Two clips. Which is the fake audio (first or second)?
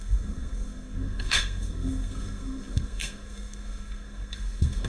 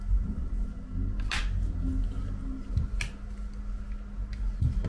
first